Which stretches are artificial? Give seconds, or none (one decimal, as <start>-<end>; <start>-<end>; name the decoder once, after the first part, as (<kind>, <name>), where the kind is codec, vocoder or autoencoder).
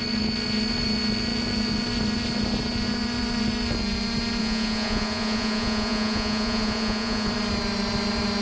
4.4-7.3 (vocoder, Vocos)